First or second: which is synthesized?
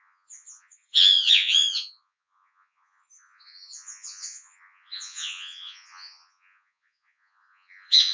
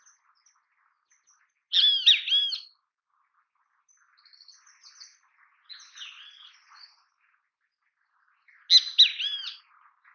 first